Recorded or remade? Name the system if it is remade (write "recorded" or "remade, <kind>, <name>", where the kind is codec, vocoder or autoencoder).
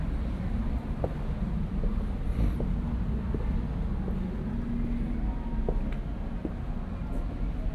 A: recorded